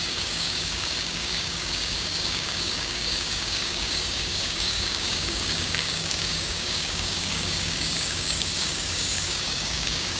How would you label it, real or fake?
fake